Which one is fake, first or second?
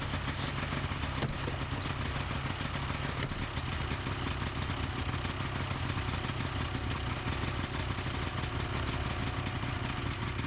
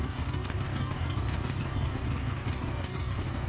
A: second